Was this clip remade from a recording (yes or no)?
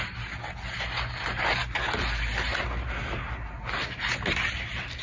no